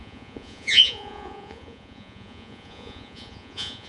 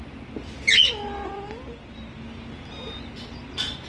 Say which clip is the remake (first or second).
first